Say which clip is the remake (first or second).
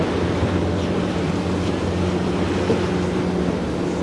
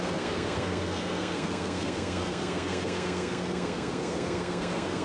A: second